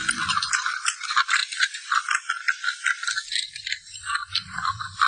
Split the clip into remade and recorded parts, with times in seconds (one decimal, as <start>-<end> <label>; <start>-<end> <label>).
0.0-5.1 remade